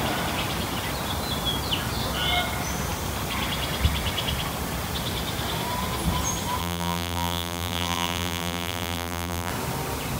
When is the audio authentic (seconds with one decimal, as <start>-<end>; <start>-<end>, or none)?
0.0-6.6; 9.5-10.2